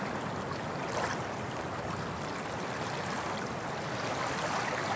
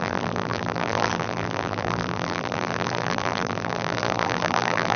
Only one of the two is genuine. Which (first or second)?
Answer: first